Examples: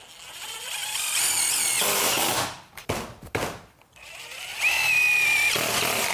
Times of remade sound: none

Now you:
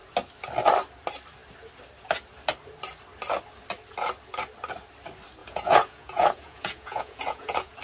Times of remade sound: 5.4-7.8 (vocoder, Vocos)